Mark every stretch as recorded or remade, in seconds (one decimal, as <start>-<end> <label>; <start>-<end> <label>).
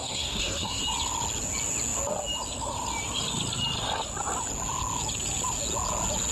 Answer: 0.0-0.8 remade; 0.8-6.3 recorded